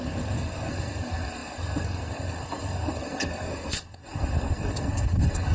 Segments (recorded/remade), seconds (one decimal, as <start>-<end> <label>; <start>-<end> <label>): 0.0-5.5 remade